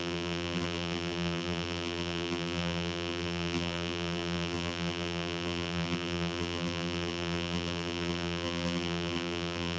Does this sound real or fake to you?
fake